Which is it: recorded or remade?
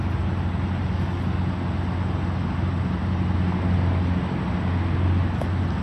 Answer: recorded